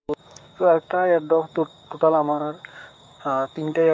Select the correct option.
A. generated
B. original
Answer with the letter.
A